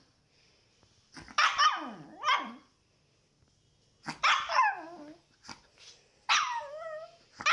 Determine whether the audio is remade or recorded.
recorded